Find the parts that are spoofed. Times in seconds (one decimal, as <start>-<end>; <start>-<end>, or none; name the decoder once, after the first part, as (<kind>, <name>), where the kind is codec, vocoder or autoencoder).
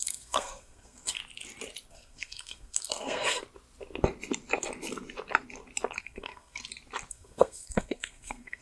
0.0-1.2 (codec, SNAC); 1.9-3.4; 6.0-6.6; 7.1-8.6